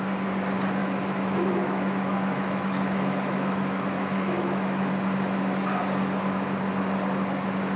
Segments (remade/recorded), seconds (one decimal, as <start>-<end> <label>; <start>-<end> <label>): 0.0-0.8 recorded; 0.8-4.9 remade; 4.9-7.8 recorded